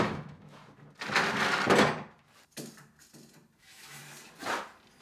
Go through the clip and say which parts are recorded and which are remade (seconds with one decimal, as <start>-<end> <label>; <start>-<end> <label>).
0.0-0.6 remade; 0.6-3.6 recorded; 3.6-4.0 remade; 4.0-5.0 recorded